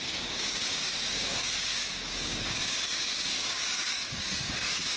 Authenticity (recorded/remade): remade